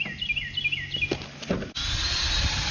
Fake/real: real